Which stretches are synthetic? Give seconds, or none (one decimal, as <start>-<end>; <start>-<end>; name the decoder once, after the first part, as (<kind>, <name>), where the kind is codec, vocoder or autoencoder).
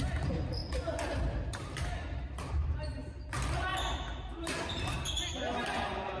none